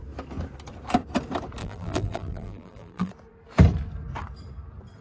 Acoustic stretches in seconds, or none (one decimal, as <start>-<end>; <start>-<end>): 0.0-1.6; 3.1-5.0